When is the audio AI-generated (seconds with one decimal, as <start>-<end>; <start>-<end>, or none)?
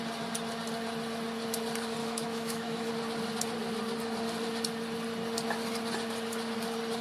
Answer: 2.0-2.9